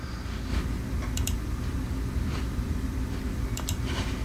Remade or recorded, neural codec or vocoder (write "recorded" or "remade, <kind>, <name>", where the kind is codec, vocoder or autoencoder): remade, vocoder, BigVGAN v2